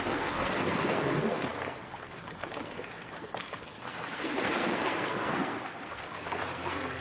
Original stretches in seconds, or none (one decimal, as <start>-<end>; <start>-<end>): none